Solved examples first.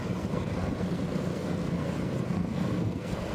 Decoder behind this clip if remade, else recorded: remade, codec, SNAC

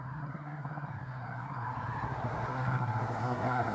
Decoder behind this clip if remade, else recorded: remade, codec, SNAC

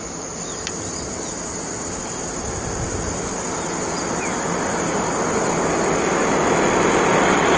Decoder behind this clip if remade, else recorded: recorded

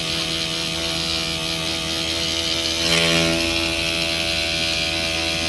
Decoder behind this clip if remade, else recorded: recorded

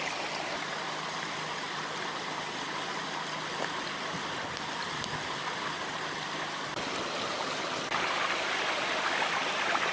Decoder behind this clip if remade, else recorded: recorded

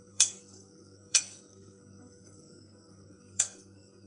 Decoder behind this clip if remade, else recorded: remade, codec, SNAC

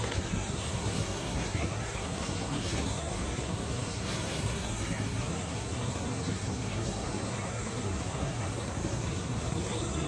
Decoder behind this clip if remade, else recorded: remade, codec, SNAC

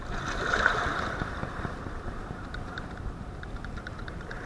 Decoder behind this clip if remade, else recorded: recorded